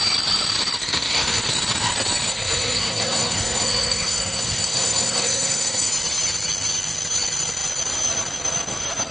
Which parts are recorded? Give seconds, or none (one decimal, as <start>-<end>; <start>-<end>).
0.0-0.8; 1.5-2.3; 5.9-9.1